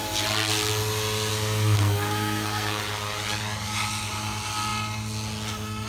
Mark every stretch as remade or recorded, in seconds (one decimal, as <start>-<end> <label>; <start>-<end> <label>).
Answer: 0.0-1.3 recorded; 1.3-2.8 remade; 2.8-5.9 recorded